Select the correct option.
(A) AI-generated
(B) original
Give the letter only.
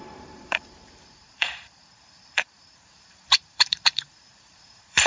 A